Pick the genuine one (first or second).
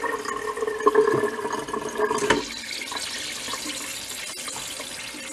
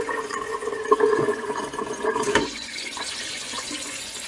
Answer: first